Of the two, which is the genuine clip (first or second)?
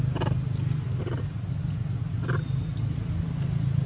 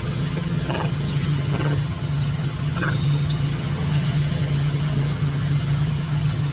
first